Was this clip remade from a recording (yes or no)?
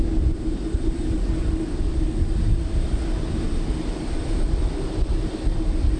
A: no